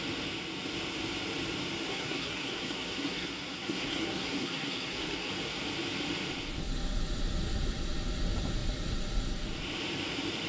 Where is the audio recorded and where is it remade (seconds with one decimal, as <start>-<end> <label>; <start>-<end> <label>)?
0.0-1.9 recorded; 1.9-5.3 remade; 5.3-10.5 recorded